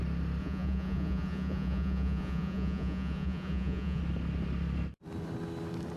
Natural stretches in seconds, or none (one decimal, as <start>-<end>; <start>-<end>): 0.0-0.4; 4.0-6.0